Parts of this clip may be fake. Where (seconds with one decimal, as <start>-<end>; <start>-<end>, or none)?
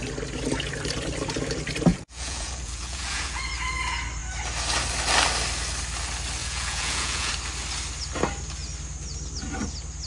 1.9-3.5; 6.4-7.3